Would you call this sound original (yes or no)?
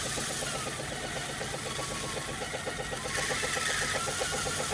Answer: yes